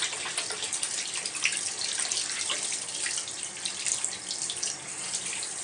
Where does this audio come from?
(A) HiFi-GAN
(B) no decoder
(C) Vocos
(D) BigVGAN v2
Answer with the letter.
B